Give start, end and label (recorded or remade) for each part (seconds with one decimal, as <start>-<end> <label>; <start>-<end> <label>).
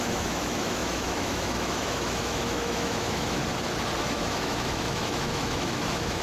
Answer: 0.0-3.4 remade; 3.4-4.0 recorded; 4.0-6.2 remade